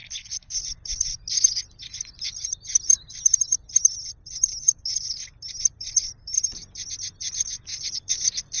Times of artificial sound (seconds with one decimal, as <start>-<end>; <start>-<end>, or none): 0.0-0.6